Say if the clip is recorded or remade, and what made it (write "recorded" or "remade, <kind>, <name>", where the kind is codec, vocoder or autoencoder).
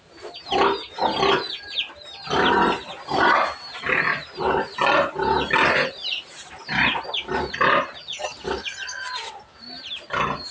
recorded